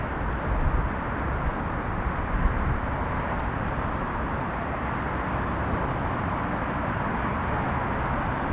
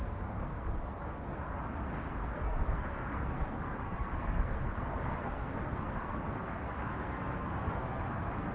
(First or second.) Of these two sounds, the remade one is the second